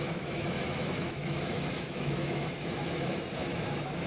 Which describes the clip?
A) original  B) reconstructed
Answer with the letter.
B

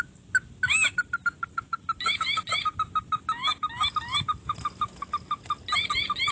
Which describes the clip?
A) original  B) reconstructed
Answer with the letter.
A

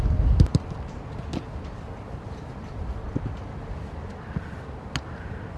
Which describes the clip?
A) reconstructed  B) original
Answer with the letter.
B